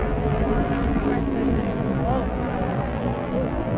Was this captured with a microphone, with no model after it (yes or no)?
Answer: no